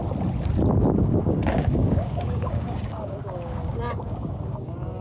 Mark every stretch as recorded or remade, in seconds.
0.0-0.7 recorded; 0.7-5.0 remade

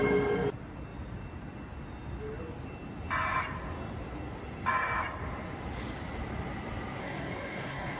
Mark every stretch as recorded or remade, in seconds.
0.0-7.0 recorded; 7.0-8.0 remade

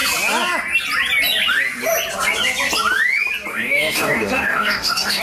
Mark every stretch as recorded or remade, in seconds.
0.0-3.5 recorded; 3.5-5.2 remade

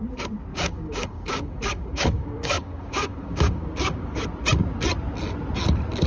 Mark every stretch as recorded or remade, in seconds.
0.0-0.5 recorded; 0.5-4.2 remade; 4.2-6.1 recorded